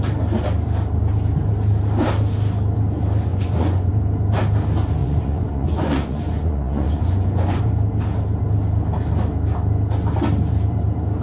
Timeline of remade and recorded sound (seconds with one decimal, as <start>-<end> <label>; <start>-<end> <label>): 0.0-3.3 recorded; 3.3-3.9 remade; 3.9-5.0 recorded; 5.0-7.6 remade; 7.6-11.2 recorded